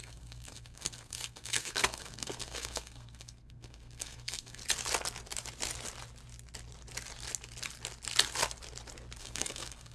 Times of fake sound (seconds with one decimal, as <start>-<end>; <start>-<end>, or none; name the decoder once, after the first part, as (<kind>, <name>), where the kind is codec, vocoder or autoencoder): 0.0-4.6 (codec, SNAC); 9.2-9.9